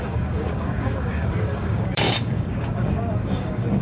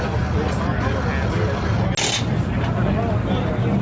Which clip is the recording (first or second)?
second